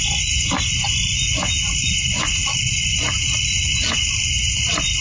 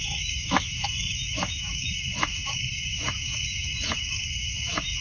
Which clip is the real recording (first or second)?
first